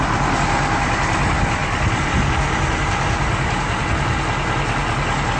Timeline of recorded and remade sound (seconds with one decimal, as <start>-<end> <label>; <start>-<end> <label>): 0.0-5.4 recorded